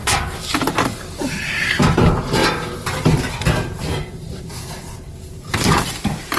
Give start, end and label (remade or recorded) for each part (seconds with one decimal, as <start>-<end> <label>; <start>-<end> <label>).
0.0-6.4 remade